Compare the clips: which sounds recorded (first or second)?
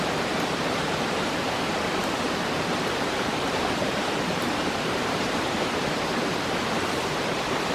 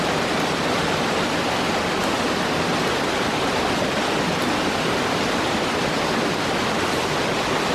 second